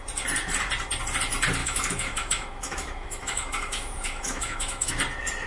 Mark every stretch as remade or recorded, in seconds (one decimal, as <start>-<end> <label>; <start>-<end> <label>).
0.0-1.6 recorded; 1.6-4.9 remade; 4.9-5.5 recorded